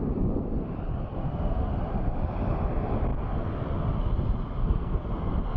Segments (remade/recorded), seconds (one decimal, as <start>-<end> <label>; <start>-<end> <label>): 0.0-1.1 recorded; 1.1-1.7 remade; 1.7-4.6 recorded; 4.6-5.1 remade; 5.1-5.6 recorded